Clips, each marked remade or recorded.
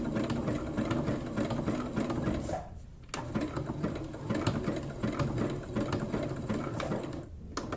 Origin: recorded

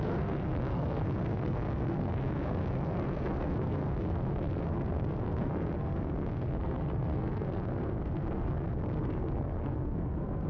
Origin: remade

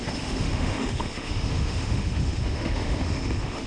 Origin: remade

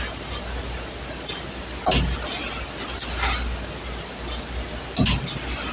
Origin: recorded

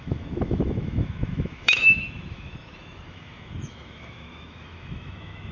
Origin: remade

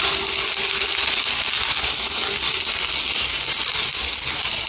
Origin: recorded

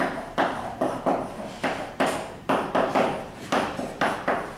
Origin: remade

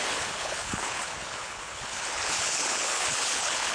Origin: remade